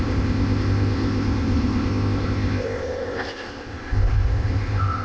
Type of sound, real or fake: fake